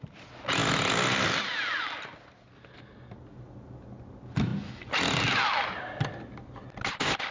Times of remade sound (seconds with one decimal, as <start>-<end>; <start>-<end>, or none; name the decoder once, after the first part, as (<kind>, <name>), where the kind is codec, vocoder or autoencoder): none